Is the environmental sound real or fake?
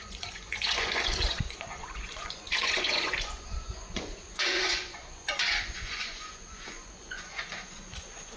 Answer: fake